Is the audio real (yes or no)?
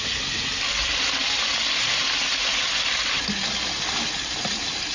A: yes